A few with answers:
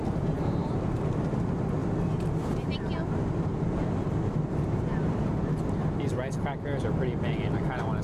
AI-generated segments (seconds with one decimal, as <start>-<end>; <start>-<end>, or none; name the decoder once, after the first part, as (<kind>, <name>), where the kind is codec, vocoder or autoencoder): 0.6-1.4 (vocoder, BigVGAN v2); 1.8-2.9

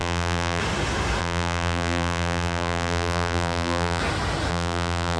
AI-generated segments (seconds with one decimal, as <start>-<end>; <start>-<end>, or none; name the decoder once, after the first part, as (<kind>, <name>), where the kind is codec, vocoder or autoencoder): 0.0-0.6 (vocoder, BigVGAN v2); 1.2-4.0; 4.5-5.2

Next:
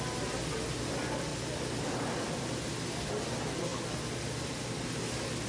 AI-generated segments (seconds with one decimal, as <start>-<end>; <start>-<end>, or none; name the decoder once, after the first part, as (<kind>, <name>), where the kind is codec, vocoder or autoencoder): 1.3-3.1 (vocoder, BigVGAN v2)

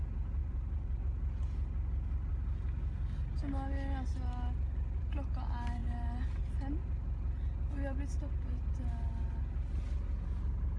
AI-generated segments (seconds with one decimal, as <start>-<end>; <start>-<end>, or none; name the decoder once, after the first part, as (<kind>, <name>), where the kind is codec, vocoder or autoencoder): 0.4-1.0 (vocoder, BigVGAN v2)

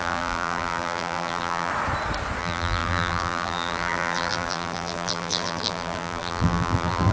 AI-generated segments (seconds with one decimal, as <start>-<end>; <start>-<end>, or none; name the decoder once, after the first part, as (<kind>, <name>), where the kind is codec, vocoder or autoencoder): 0.0-1.7 (vocoder, BigVGAN v2); 2.4-7.1

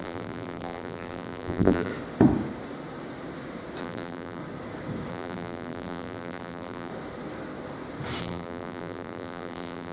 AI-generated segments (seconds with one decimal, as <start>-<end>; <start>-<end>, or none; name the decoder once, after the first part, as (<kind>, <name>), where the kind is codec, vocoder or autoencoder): 0.0-1.9 (vocoder, BigVGAN v2); 3.8-4.4; 5.1-6.9; 8.2-9.9

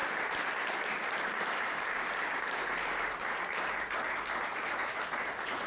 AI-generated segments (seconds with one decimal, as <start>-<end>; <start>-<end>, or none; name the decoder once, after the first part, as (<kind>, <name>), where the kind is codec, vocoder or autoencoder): 0.0-3.4 (vocoder, BigVGAN v2)

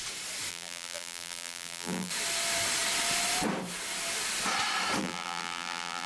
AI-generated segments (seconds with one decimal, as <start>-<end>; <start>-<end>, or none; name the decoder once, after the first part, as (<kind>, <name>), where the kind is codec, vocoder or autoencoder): 0.5-2.1 (vocoder, BigVGAN v2); 5.0-6.1